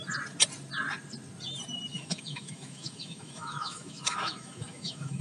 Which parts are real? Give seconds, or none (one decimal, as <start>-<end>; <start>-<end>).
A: 0.0-1.9